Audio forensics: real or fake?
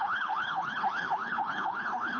fake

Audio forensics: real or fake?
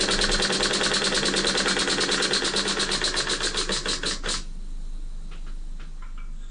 real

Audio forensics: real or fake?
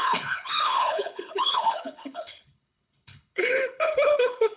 fake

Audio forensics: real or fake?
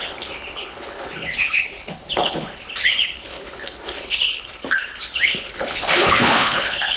fake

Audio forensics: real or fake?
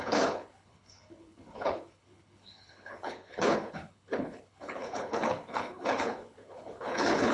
fake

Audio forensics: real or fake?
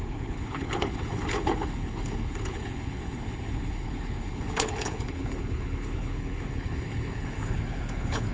fake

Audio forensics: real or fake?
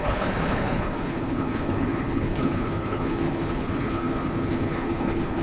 fake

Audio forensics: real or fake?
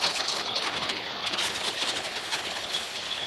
fake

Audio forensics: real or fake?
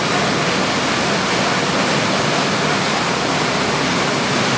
real